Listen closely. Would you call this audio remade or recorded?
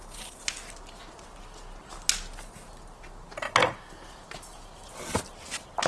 recorded